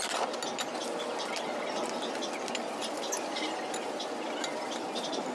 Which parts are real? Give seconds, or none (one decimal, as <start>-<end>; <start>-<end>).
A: 0.0-5.3